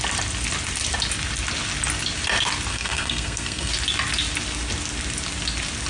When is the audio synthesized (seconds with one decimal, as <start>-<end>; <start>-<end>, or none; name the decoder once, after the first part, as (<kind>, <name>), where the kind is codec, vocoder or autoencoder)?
2.7-3.7 (codec, SNAC)